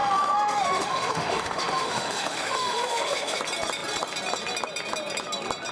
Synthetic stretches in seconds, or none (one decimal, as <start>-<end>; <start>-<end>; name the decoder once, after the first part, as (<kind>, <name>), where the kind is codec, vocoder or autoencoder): 0.0-3.4 (autoencoder, DAC-VAE)